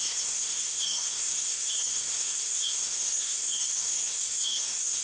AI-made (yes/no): yes